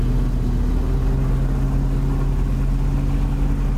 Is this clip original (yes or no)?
yes